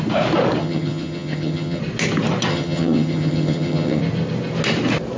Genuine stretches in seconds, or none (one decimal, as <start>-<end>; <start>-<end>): 0.0-0.6; 1.8-2.5; 4.0-5.2